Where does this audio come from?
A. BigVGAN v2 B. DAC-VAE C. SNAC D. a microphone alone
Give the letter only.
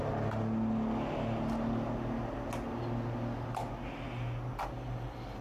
D